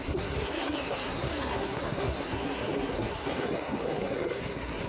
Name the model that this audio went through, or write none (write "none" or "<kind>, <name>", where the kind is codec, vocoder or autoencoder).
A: codec, SNAC